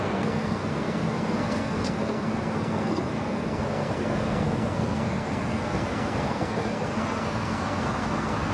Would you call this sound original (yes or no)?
no